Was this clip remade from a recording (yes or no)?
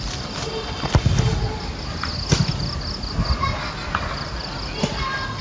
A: no